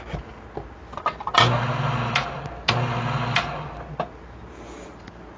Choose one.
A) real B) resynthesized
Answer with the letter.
A